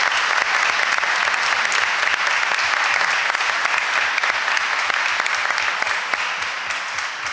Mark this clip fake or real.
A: real